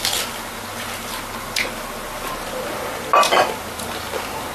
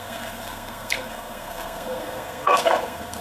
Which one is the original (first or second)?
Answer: first